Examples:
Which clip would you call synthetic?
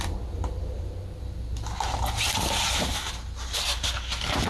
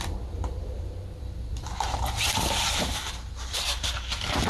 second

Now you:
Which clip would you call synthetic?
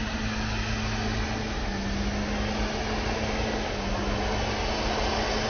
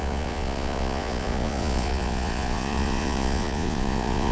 second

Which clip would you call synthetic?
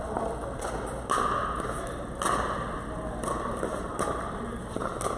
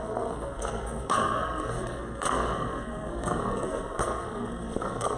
second